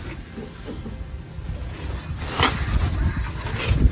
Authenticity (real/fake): real